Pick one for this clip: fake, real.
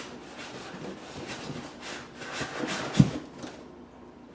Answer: real